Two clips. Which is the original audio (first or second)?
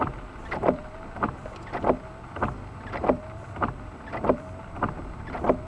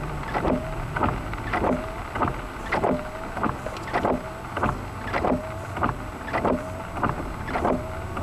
second